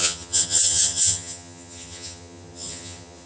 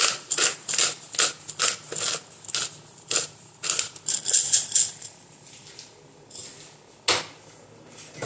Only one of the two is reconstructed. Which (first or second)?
first